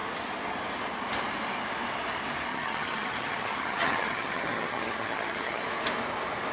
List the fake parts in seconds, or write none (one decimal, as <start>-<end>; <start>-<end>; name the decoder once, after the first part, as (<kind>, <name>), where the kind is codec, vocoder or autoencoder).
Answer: 2.5-5.6 (vocoder, HiFi-GAN)